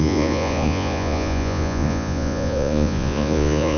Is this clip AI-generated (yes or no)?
yes